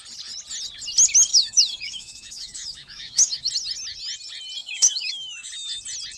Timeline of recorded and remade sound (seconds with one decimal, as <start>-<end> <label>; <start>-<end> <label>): 0.0-1.3 recorded; 1.3-3.5 remade; 3.5-4.6 recorded; 4.6-5.5 remade; 5.5-6.2 recorded